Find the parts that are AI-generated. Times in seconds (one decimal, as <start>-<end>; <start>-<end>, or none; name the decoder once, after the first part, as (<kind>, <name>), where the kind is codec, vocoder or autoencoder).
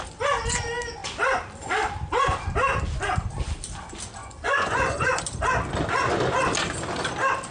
4.2-5.2 (vocoder, Vocos)